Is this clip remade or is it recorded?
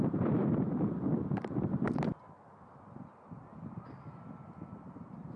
recorded